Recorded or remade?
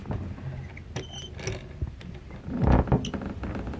recorded